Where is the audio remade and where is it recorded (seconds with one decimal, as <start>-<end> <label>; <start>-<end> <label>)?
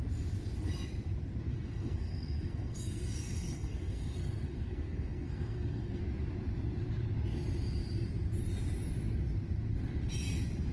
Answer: 0.0-1.5 recorded; 1.5-6.0 remade; 6.0-10.7 recorded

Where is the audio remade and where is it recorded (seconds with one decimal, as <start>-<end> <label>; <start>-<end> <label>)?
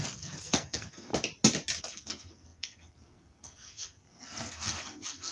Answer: 0.0-1.1 remade; 1.1-1.8 recorded; 1.8-5.3 remade